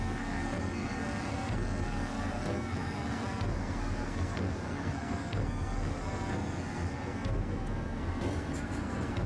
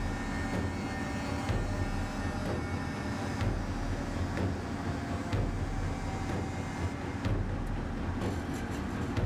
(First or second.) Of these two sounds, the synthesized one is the first